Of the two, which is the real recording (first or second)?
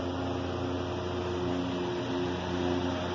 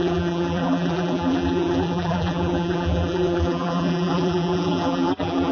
first